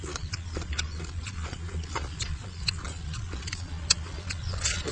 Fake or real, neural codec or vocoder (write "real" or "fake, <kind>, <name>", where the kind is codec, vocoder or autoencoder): fake, vocoder, Vocos